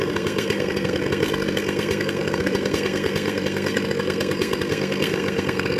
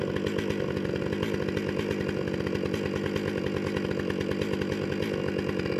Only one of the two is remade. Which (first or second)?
first